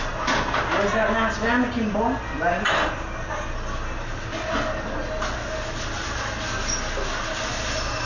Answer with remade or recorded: recorded